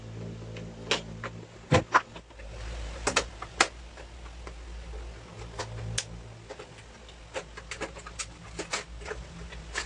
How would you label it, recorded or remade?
recorded